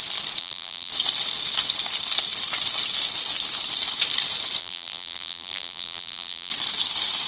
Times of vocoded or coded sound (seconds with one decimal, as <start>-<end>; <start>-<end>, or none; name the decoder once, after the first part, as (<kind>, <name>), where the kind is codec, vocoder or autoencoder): 0.4-0.9 (vocoder, BigVGAN v2); 4.6-6.5